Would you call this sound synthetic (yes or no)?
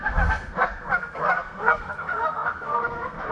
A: yes